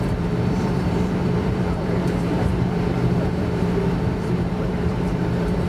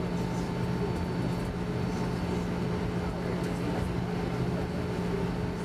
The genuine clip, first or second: second